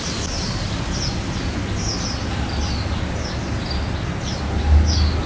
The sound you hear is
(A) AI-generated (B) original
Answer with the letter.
B